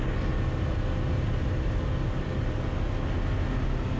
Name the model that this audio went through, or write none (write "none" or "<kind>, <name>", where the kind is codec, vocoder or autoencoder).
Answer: none